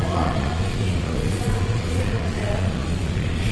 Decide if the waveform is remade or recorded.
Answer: remade